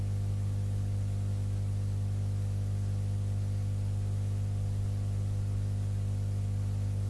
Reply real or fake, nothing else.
real